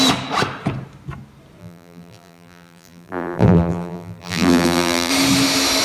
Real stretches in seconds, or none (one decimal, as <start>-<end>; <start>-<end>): 0.0-1.6; 5.1-5.8